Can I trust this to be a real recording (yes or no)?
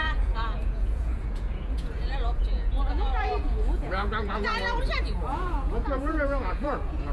no